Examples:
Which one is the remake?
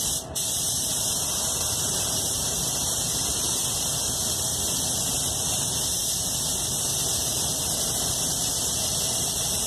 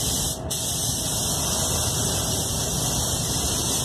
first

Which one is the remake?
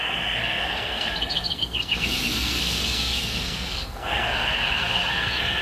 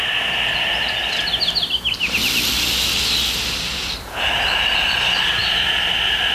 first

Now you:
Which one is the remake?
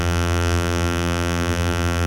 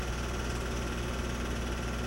first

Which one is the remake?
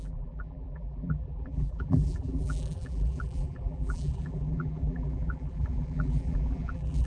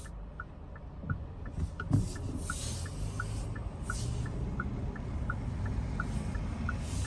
first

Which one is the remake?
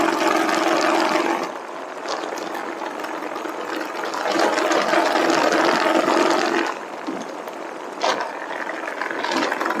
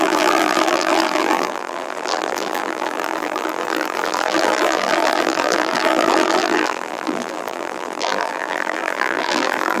second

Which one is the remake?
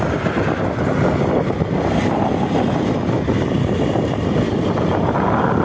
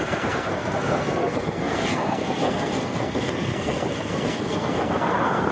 second